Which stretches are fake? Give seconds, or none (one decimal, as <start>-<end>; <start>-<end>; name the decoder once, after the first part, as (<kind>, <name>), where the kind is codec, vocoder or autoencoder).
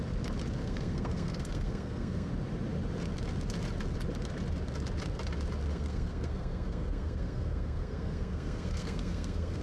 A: 0.6-2.3 (codec, SNAC); 5.7-9.6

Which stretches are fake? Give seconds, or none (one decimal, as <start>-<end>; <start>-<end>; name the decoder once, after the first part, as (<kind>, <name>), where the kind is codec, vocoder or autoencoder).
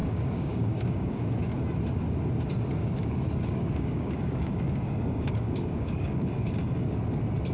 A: 0.0-1.2 (codec, DAC); 2.8-6.9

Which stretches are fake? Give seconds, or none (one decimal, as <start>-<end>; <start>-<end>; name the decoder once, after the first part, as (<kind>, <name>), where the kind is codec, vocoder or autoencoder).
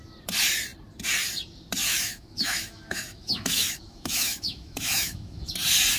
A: 1.9-5.5 (autoencoder, DAC-VAE)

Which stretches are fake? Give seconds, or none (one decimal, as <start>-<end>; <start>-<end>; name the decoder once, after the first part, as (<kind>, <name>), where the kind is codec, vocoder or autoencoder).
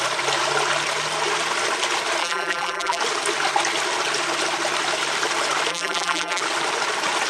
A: 2.2-3.0 (vocoder, BigVGAN v2); 5.7-6.4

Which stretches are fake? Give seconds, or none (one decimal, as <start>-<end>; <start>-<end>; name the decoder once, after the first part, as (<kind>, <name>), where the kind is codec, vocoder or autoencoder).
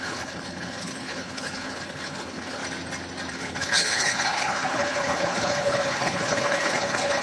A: 0.0-2.6 (codec, HILCodec); 3.3-7.2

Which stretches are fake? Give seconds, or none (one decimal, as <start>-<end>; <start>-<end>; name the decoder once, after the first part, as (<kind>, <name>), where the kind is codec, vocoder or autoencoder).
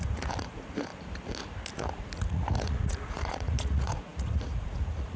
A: 0.0-0.9 (vocoder, Vocos); 1.7-5.2